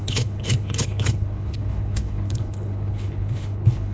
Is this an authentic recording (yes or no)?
no